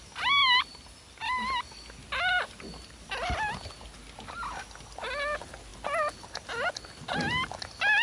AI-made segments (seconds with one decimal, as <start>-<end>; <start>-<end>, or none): none